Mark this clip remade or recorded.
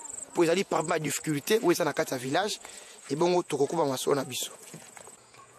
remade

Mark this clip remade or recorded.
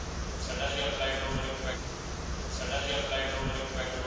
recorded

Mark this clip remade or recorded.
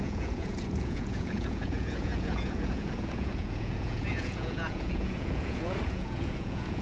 remade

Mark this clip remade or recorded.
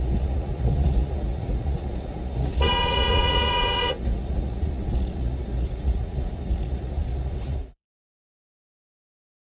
remade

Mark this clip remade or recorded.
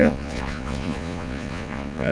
remade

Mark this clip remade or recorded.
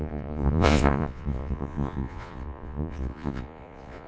remade